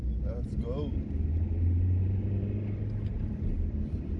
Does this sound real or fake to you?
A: real